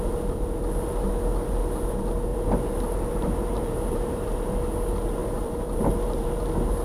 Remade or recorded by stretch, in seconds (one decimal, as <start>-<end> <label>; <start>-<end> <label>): 0.0-2.3 recorded; 2.3-4.6 remade; 4.6-5.2 recorded; 5.2-6.3 remade; 6.3-6.8 recorded